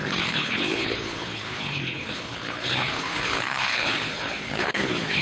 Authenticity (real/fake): fake